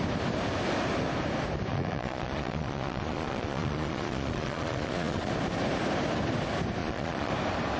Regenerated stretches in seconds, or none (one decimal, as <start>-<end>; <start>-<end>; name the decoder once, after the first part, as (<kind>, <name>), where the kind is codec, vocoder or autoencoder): 1.7-5.3 (vocoder, Vocos); 6.8-7.3